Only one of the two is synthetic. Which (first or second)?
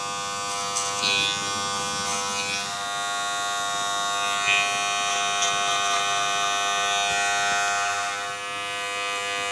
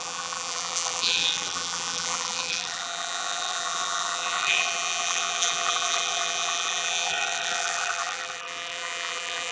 second